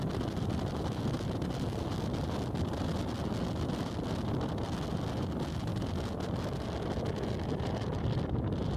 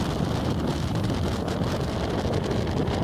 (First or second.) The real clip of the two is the first